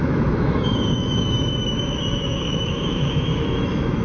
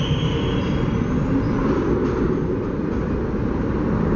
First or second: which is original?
second